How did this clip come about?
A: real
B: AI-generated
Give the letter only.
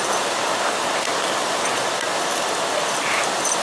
A